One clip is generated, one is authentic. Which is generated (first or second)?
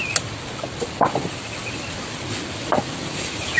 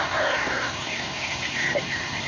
second